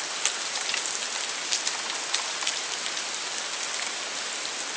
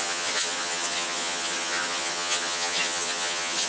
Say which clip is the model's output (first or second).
second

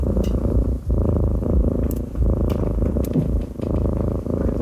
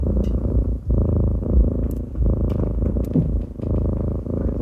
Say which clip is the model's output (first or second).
first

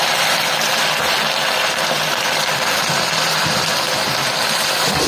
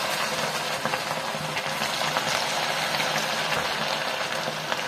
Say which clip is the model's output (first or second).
first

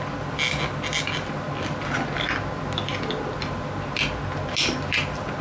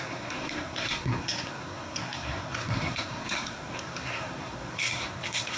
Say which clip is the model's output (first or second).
second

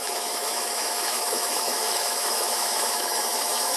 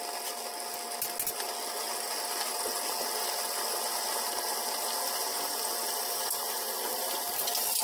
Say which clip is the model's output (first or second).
first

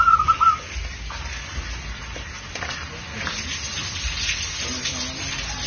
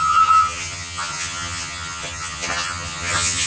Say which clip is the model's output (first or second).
second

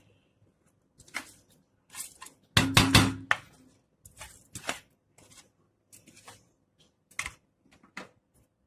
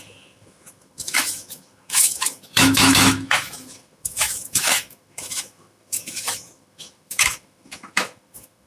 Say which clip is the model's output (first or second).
second